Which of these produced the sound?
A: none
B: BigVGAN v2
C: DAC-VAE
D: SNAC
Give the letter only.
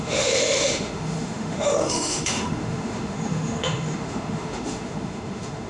C